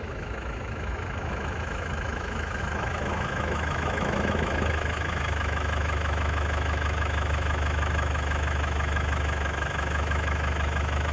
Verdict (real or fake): fake